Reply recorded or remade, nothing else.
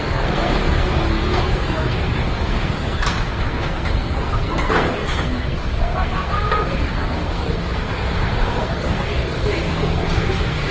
remade